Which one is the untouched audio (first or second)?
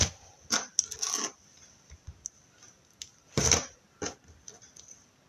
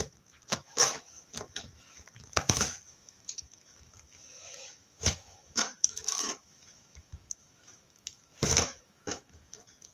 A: first